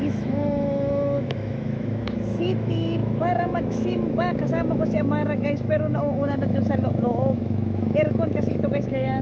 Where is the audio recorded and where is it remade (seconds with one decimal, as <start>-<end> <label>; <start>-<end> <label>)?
0.0-9.2 remade